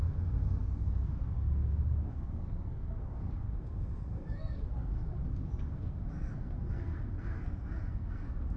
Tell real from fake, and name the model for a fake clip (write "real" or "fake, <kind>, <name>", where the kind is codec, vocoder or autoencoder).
fake, codec, SNAC